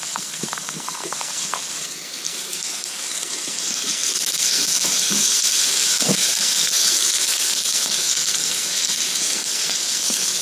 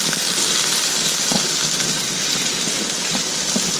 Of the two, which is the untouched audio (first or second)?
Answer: second